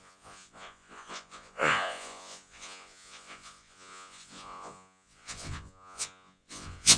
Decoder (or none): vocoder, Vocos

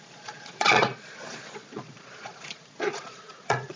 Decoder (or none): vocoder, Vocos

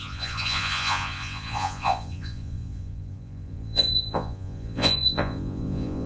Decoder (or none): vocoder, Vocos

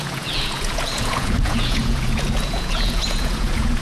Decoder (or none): vocoder, Vocos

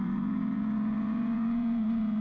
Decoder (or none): vocoder, Vocos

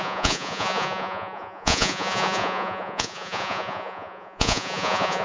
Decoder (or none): vocoder, Vocos